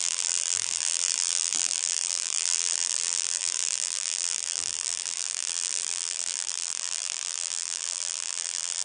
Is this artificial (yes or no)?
yes